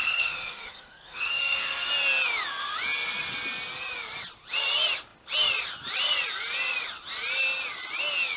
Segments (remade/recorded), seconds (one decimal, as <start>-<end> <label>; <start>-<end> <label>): 0.0-1.9 remade; 1.9-8.4 recorded